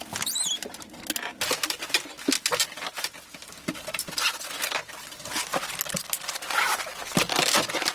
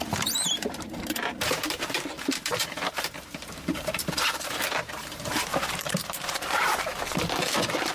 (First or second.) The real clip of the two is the first